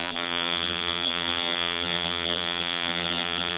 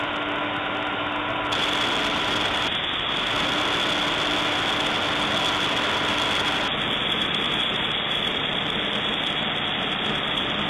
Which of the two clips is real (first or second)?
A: second